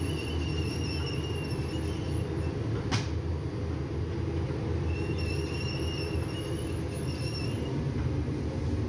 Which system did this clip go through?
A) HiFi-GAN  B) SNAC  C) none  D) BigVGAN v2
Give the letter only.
C